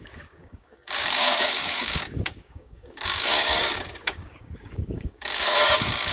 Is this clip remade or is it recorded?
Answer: remade